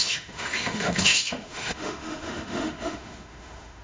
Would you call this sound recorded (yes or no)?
no